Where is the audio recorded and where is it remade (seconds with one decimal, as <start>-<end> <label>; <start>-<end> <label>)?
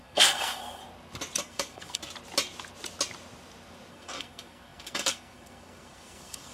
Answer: 0.0-0.8 remade; 0.8-1.4 recorded; 1.4-2.0 remade; 2.0-3.9 recorded; 3.9-6.5 remade